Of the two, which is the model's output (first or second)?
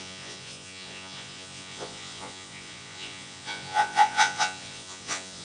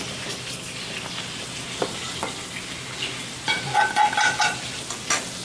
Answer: first